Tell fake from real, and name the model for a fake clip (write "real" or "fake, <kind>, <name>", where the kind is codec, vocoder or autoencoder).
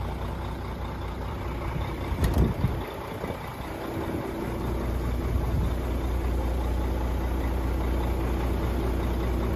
real